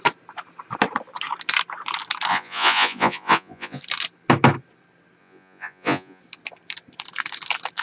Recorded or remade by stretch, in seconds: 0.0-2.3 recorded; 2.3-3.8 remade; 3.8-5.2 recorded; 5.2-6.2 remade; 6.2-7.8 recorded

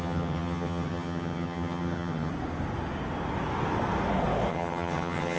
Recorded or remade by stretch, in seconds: 0.0-2.3 remade; 2.3-4.5 recorded; 4.5-5.4 remade

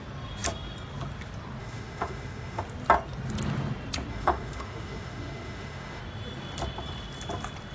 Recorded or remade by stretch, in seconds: 0.0-1.6 recorded; 1.6-2.6 remade; 2.6-4.1 recorded; 4.1-6.0 remade; 6.0-7.7 recorded

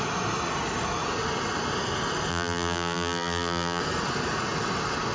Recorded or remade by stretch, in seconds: 0.0-2.3 recorded; 2.3-3.8 remade; 3.8-5.1 recorded